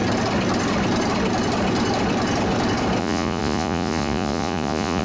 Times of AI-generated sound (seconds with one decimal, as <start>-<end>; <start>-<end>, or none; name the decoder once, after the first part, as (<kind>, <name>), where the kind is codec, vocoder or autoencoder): 3.0-5.0 (vocoder, Vocos)